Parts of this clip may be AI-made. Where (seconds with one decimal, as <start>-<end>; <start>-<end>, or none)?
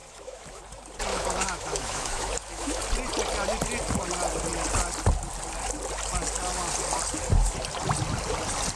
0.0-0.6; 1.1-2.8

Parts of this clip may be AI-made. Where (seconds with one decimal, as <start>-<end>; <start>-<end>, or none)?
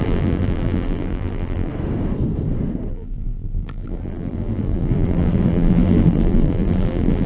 0.0-1.7; 2.9-7.3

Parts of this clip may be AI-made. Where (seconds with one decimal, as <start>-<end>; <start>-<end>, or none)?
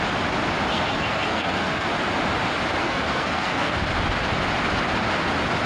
0.7-1.9; 2.8-3.8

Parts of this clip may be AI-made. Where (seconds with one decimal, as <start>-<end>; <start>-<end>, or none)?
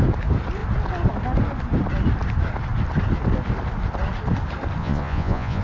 4.8-5.6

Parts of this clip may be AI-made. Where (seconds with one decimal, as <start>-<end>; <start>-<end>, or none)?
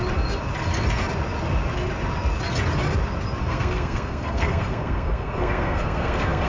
3.4-6.5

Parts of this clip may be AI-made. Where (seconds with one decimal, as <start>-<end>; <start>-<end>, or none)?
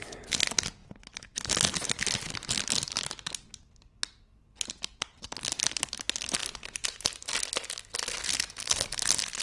none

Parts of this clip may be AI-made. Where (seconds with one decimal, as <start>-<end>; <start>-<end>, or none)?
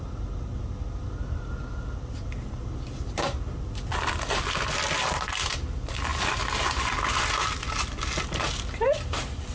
none